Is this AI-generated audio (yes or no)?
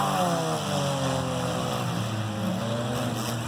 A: no